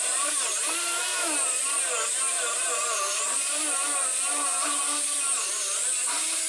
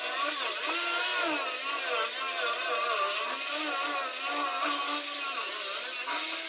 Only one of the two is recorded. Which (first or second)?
second